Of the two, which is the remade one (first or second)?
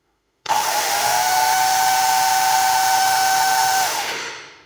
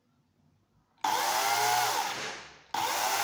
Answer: first